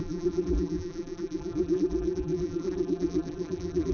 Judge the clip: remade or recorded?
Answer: remade